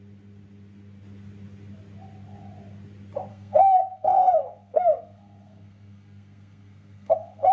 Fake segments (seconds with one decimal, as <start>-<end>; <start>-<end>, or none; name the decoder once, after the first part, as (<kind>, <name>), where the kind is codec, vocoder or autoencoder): 3.3-7.5 (codec, SNAC)

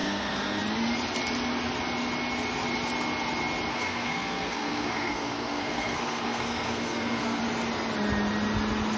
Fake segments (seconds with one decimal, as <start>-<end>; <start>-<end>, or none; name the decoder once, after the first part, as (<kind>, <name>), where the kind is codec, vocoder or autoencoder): 0.0-0.6 (codec, SNAC); 3.7-7.4

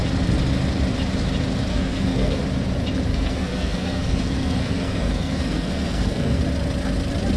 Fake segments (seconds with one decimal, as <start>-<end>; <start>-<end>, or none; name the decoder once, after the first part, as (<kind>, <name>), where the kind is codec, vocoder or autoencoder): 1.7-2.4 (codec, SNAC); 3.1-6.4